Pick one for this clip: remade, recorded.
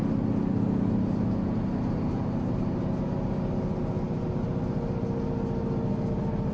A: recorded